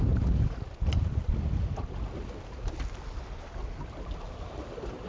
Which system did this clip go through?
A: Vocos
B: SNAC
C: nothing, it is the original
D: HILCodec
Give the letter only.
C